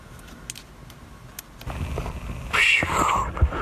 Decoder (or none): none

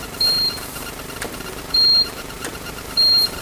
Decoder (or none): vocoder, BigVGAN v2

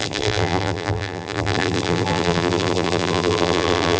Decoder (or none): vocoder, BigVGAN v2